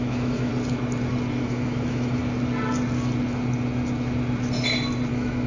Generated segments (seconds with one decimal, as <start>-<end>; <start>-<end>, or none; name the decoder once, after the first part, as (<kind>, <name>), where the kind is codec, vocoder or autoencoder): 0.0-0.5 (autoencoder, DAC-VAE); 1.4-2.2; 5.1-5.5